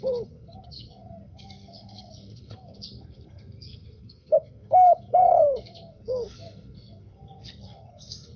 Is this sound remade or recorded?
remade